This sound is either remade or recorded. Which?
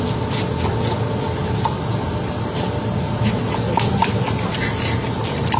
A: recorded